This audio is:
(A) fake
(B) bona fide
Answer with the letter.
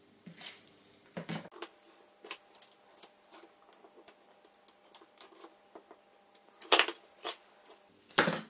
B